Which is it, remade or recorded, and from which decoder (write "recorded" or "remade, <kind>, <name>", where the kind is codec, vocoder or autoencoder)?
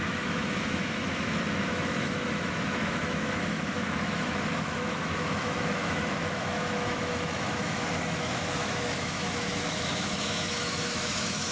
remade, autoencoder, DAC-VAE